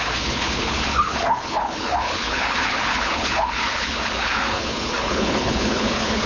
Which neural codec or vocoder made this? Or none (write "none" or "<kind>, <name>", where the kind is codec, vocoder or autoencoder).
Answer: codec, HILCodec